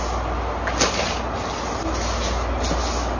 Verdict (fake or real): real